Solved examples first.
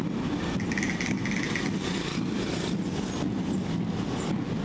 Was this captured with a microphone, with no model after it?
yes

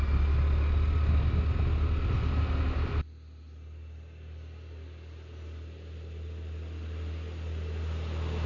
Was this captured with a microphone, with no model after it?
yes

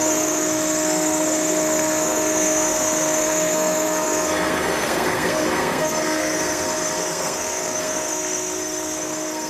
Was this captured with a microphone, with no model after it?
no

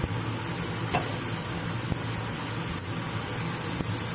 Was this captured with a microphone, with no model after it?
yes